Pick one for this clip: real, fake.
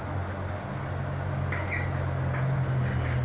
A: real